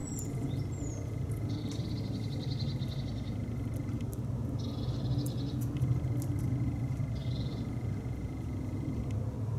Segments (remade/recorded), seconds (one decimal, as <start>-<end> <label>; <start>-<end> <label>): 0.0-1.6 remade; 1.6-7.2 recorded; 7.2-9.0 remade; 9.0-9.6 recorded